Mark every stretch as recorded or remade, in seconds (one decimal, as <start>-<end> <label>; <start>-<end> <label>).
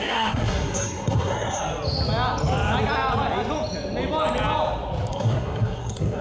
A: 0.0-1.6 remade; 1.6-5.1 recorded; 5.1-6.2 remade